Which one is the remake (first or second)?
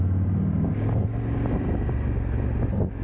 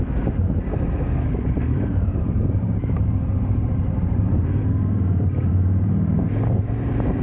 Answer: second